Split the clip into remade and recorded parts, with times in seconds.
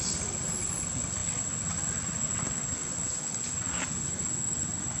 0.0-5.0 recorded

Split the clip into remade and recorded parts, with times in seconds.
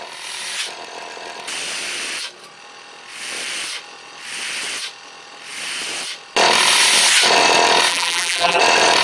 0.0-7.9 recorded; 7.9-8.6 remade; 8.6-9.0 recorded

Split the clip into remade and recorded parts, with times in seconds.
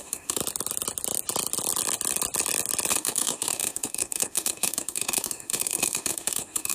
0.0-0.4 remade; 0.4-2.9 recorded; 2.9-6.7 remade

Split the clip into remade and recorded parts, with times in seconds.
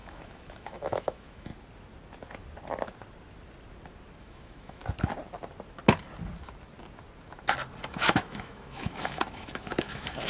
0.0-1.5 remade; 1.5-4.2 recorded; 4.2-4.8 remade; 4.8-7.9 recorded; 7.9-10.3 remade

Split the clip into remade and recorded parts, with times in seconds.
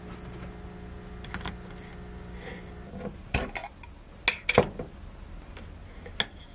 0.0-6.5 recorded